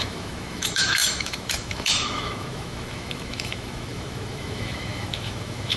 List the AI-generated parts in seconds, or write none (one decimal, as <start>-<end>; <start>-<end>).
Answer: 0.0-5.8